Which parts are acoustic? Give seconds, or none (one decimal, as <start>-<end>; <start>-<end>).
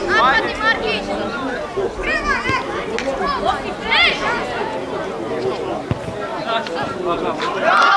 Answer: 0.0-6.3; 7.5-8.0